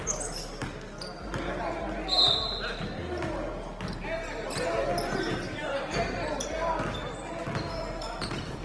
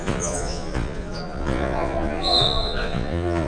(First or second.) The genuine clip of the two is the first